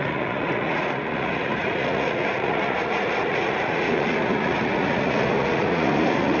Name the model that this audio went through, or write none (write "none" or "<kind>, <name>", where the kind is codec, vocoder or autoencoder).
vocoder, Vocos